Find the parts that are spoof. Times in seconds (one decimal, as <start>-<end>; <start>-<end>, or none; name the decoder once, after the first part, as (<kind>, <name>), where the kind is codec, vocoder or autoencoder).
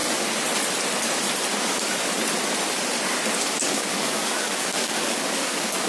3.5-5.9 (codec, DAC)